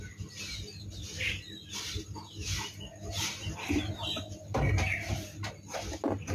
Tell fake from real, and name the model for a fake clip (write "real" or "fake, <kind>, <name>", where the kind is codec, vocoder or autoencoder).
real